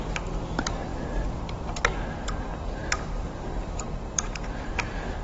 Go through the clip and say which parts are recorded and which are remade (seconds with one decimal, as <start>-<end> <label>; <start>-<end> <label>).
0.0-0.9 remade; 0.9-2.1 recorded; 2.1-5.2 remade